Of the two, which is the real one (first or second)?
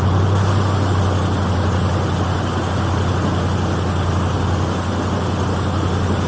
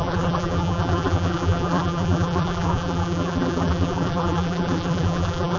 first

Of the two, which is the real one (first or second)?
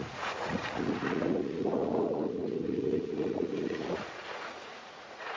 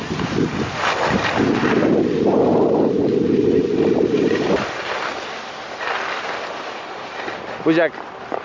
second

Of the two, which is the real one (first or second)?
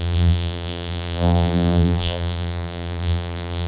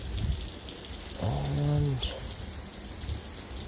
second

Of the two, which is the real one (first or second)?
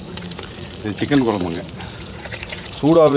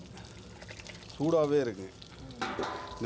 second